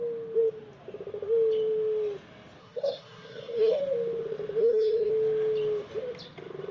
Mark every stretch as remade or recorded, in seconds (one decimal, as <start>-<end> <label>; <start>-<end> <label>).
0.0-2.6 recorded; 2.6-3.8 remade; 3.8-4.6 recorded; 4.6-5.1 remade; 5.1-6.7 recorded

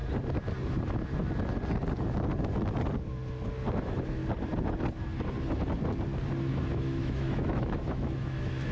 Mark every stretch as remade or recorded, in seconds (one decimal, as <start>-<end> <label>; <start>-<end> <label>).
0.0-3.8 recorded; 3.8-4.2 remade; 4.2-6.5 recorded; 6.5-8.7 remade